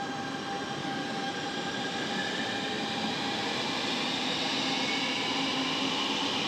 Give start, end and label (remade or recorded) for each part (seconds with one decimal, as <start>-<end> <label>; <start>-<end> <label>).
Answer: 0.0-0.8 recorded; 0.8-1.3 remade; 1.3-6.5 recorded